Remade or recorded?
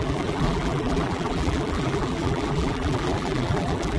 remade